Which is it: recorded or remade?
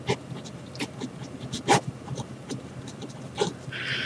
remade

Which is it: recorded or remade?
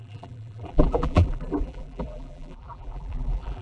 remade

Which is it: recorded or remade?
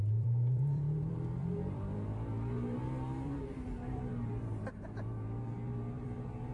remade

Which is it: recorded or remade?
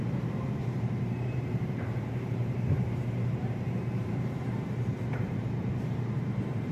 remade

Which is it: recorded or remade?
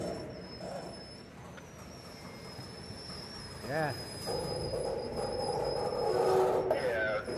recorded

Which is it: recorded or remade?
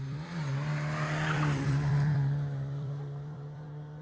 remade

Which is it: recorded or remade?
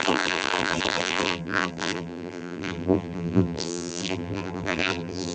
remade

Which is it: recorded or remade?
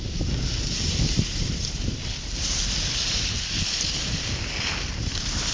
recorded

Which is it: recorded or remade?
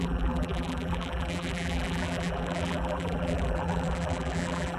remade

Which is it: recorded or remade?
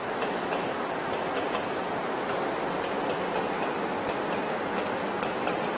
remade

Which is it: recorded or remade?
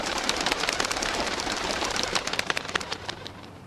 remade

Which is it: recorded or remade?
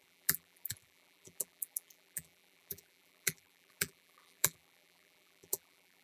remade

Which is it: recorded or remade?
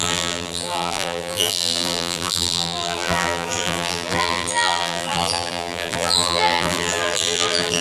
remade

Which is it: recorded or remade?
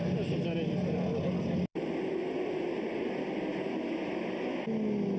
recorded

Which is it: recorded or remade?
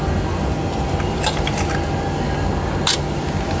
remade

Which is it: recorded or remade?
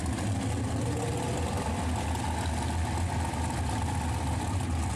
recorded